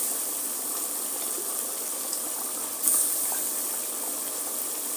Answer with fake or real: real